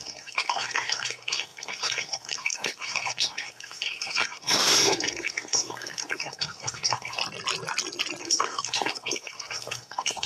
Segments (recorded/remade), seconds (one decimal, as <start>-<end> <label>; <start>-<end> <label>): 0.0-7.2 remade; 7.2-8.2 recorded; 8.2-10.3 remade

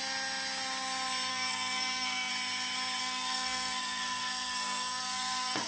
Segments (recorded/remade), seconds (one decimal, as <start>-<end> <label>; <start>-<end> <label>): 0.0-1.3 recorded; 1.3-2.3 remade; 2.3-3.0 recorded; 3.0-5.7 remade

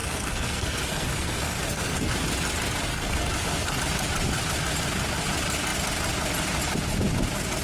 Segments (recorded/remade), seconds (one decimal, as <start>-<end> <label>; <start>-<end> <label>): 0.0-2.1 remade; 2.1-2.9 recorded; 2.9-3.8 remade; 3.8-7.6 recorded

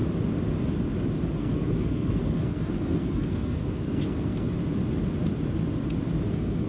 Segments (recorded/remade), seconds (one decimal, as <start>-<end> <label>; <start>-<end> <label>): 0.0-1.4 recorded; 1.4-4.5 remade; 4.5-6.3 recorded; 6.3-6.7 remade